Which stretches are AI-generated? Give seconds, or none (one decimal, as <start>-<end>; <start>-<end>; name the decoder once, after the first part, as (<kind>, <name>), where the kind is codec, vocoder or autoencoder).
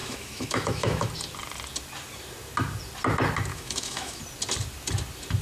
0.0-1.1 (autoencoder, DAC-VAE); 3.5-4.2